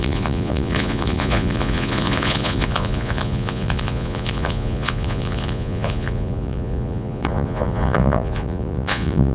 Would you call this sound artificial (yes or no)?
yes